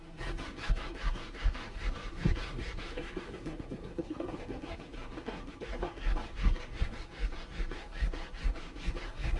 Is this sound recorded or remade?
remade